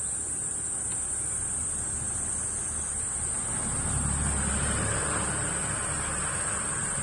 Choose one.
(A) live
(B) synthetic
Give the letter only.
A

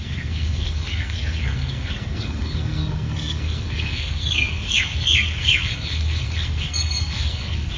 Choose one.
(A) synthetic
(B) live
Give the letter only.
A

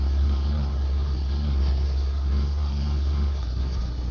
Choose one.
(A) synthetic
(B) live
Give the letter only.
A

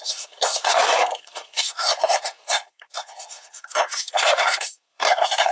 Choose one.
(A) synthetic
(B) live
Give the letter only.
A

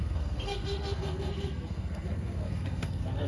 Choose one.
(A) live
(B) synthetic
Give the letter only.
B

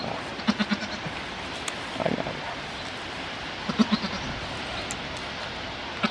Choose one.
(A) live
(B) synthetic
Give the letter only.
A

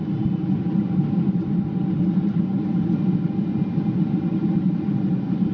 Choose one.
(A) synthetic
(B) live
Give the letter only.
B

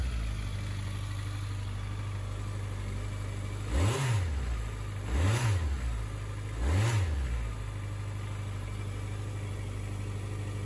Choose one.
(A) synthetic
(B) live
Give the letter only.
B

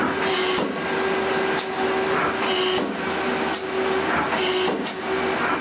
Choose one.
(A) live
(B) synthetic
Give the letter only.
A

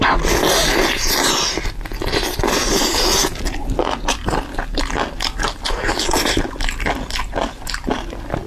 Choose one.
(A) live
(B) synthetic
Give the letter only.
A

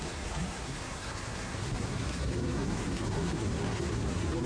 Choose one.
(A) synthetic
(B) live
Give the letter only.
A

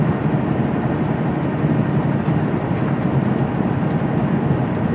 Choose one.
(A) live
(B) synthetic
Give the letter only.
A